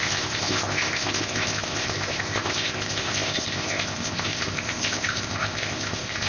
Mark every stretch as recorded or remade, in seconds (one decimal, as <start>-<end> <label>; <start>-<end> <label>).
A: 0.0-6.3 remade